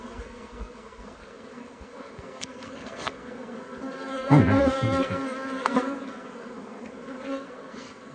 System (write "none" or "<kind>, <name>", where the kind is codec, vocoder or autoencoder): codec, SNAC